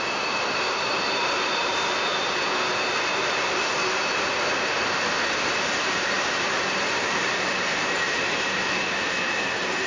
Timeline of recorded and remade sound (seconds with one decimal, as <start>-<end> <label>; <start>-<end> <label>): 0.0-2.1 remade; 2.1-2.8 recorded; 2.8-3.8 remade; 3.8-4.3 recorded; 4.3-9.9 remade